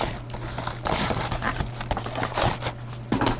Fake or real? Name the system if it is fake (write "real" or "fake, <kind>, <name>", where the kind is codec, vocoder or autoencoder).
real